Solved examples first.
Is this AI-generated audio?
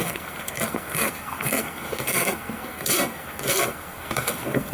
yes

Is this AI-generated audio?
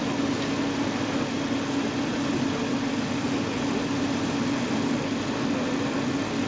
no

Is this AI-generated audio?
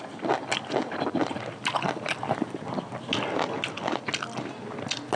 no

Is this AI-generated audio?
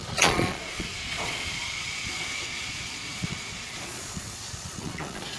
yes